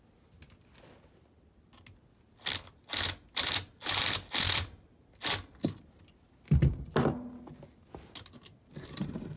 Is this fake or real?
real